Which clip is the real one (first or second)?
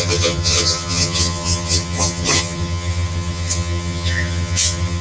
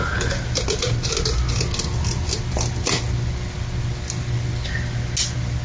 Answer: second